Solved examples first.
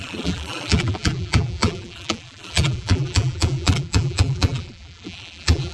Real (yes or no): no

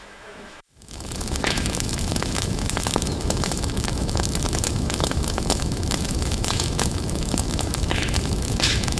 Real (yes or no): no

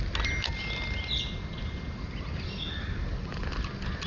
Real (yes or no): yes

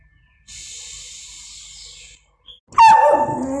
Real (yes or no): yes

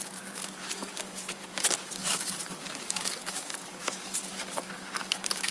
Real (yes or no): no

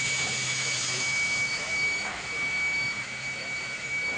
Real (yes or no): no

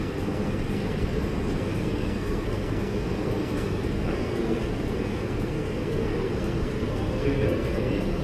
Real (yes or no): no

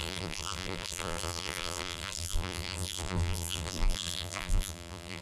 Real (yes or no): no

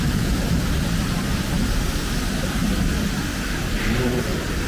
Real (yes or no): yes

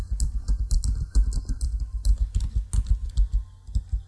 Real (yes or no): yes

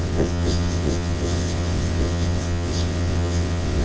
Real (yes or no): no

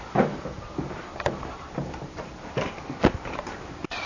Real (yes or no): no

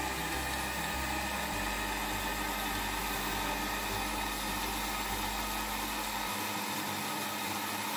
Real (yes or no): yes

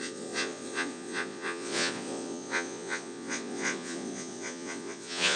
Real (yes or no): no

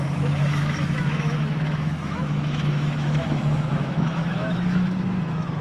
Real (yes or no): no